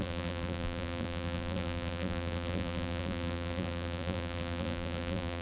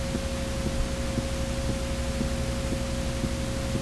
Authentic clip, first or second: second